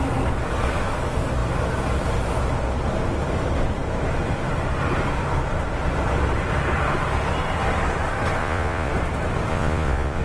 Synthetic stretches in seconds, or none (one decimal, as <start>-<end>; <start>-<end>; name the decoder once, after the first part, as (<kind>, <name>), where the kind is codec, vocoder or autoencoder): 8.4-8.9 (vocoder, Vocos); 9.5-10.2

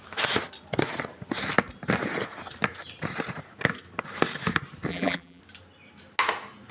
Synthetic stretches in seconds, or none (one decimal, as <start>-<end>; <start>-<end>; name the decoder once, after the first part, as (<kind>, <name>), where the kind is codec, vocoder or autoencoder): 4.9-5.4 (vocoder, BigVGAN v2)

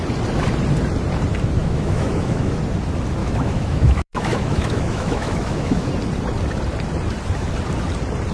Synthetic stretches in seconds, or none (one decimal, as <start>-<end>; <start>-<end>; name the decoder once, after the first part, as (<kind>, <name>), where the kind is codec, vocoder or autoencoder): 1.6-2.6 (autoencoder, DAC-VAE); 3.2-5.9

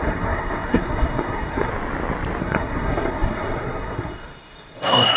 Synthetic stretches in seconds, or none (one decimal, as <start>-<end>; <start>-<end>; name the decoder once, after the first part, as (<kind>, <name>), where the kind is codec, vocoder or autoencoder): 0.0-1.7 (codec, SNAC); 2.4-5.2

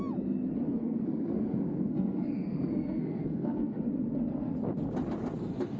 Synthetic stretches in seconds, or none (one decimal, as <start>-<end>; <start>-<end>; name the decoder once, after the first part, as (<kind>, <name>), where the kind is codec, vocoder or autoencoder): 0.8-3.8 (codec, SNAC)

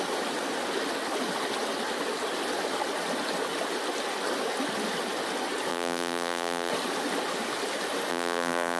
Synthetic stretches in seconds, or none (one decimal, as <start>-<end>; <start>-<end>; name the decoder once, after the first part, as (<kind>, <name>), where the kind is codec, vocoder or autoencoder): 5.7-6.7 (vocoder, BigVGAN v2); 8.1-8.8

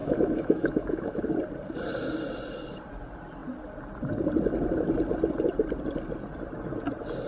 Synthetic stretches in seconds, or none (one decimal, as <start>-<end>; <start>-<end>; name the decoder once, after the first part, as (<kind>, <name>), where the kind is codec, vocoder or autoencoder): 0.0-1.2 (autoencoder, DAC-VAE)